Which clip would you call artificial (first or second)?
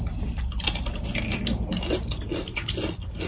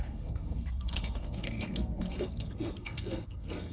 second